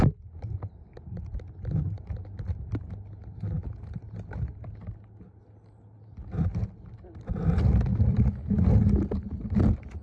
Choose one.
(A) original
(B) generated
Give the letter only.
A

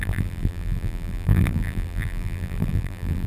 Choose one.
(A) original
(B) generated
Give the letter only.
B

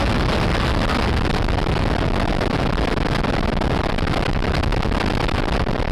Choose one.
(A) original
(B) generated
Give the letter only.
A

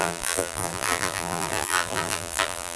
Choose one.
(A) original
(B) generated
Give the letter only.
B